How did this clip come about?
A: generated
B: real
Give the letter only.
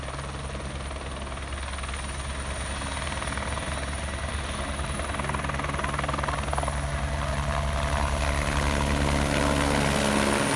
B